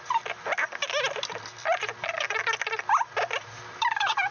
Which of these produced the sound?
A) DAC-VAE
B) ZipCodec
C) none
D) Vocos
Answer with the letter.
C